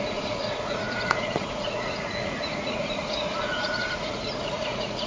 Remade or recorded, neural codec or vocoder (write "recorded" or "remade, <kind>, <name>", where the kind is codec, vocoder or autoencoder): remade, vocoder, Vocos